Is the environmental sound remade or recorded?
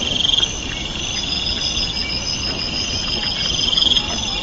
recorded